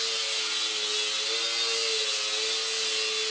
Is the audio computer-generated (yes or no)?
no